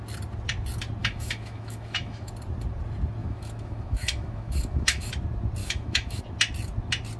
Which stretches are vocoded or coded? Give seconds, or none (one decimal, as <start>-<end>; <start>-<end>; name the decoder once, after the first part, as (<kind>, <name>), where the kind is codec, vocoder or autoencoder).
1.0-2.3 (autoencoder, DAC-VAE); 3.2-5.1; 5.6-6.2